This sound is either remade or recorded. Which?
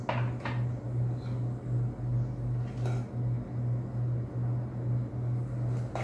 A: recorded